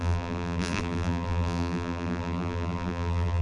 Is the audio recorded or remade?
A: remade